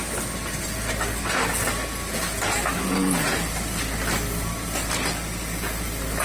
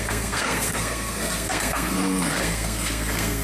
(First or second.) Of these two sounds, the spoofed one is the second